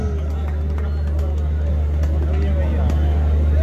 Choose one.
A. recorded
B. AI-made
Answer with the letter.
A